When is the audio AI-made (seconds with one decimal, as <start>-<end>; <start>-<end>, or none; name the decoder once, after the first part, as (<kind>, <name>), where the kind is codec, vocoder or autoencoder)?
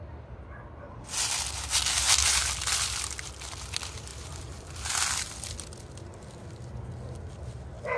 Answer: none